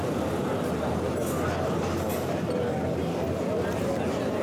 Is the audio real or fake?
real